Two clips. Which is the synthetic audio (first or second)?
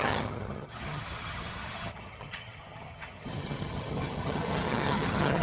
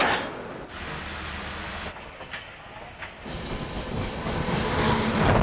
first